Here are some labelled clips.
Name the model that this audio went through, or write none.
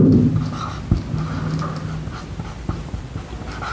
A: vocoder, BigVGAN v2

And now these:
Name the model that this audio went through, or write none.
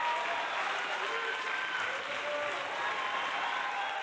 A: none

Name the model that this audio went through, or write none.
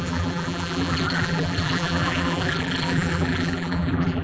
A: vocoder, BigVGAN v2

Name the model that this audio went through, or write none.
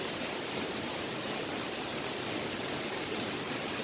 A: vocoder, BigVGAN v2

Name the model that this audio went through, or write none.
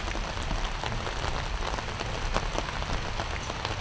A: none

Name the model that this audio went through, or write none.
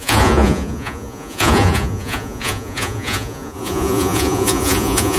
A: vocoder, Vocos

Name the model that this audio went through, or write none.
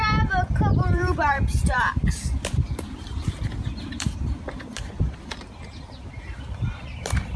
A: vocoder, BigVGAN v2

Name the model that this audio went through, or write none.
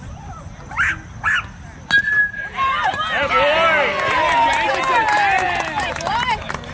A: none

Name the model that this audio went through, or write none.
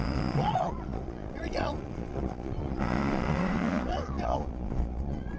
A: vocoder, Vocos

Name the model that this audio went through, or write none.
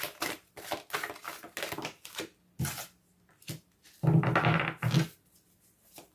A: none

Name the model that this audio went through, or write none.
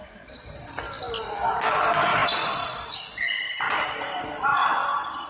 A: none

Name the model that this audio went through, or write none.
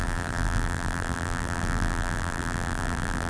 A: vocoder, BigVGAN v2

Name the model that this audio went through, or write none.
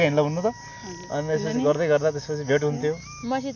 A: none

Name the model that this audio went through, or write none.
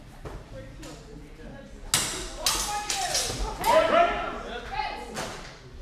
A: none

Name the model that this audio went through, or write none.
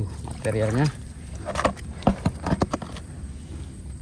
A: none